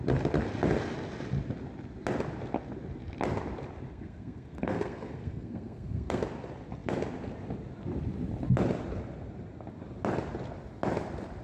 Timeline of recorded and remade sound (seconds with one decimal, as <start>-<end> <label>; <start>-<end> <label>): 0.0-3.9 recorded; 3.9-6.2 remade; 6.2-11.4 recorded